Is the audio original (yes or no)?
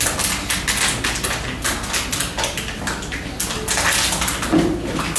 yes